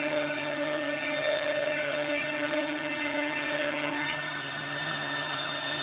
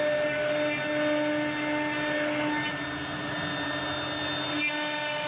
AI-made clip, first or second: first